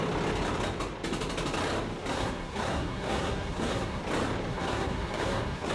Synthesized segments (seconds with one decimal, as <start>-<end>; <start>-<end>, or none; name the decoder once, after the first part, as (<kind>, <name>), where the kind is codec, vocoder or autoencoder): 2.1-4.0 (codec, SNAC); 4.5-5.7